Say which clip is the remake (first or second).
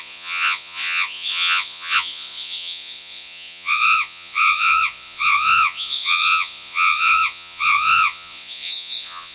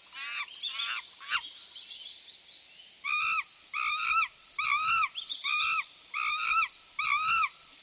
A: first